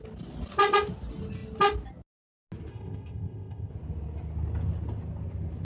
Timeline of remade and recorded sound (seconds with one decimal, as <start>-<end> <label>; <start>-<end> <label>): 0.0-2.7 recorded; 2.7-3.7 remade; 3.7-5.6 recorded